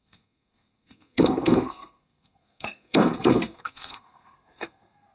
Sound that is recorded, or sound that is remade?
remade